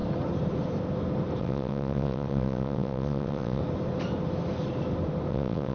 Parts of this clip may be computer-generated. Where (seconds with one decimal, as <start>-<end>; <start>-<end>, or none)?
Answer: 1.4-3.6; 5.3-5.7